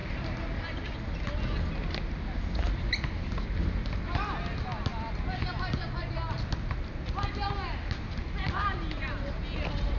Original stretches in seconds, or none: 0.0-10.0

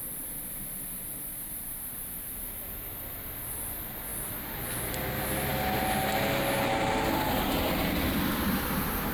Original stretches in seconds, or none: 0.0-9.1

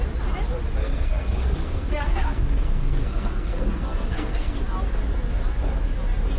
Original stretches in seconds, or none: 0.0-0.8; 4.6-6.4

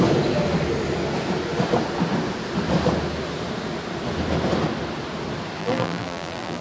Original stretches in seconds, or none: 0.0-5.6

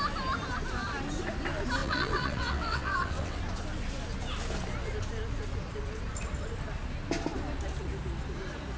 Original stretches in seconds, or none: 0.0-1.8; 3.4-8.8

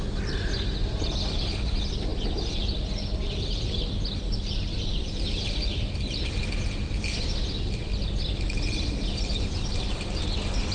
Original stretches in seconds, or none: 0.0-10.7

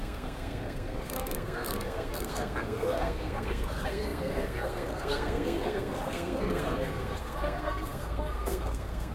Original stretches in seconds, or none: none

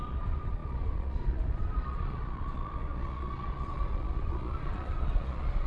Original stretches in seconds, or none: none